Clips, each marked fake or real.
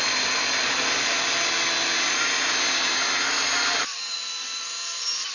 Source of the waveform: real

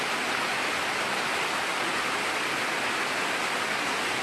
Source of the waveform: real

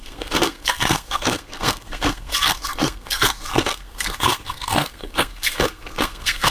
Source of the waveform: fake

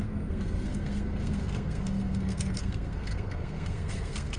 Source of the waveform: fake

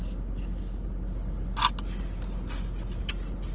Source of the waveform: real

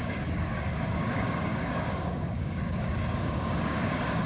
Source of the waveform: fake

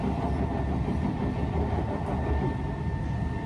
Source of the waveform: real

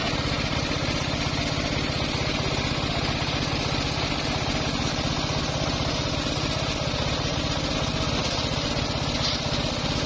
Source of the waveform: real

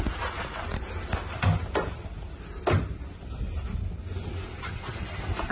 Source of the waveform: real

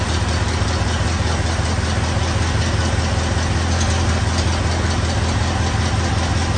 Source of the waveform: real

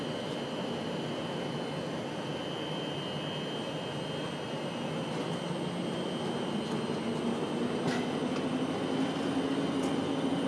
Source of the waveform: real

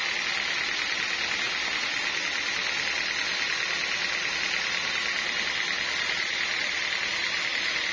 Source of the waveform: real